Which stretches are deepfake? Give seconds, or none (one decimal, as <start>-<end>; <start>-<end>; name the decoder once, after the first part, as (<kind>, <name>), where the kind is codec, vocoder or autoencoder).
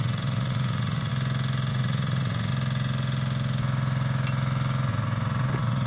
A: 0.0-1.1 (vocoder, Vocos); 1.7-2.5; 4.9-5.9